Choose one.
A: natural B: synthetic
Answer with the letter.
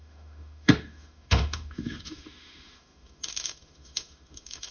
B